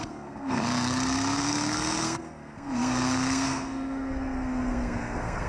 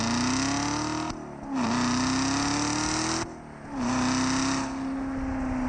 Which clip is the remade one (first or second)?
first